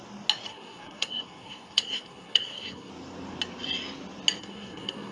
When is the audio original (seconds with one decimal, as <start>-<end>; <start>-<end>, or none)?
0.0-0.5; 2.9-4.4